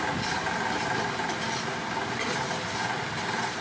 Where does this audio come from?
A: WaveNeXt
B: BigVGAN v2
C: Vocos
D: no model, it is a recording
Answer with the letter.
D